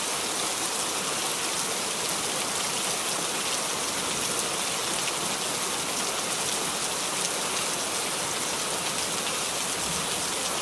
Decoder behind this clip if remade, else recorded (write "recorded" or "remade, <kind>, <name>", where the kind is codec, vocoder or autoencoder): recorded